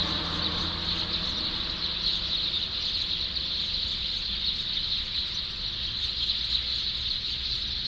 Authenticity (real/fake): real